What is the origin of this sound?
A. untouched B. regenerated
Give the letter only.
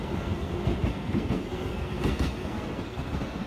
B